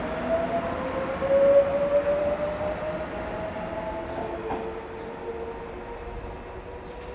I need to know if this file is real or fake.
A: real